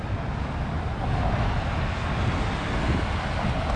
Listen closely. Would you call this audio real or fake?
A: real